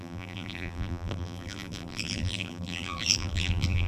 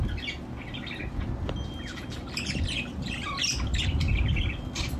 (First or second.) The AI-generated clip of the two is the first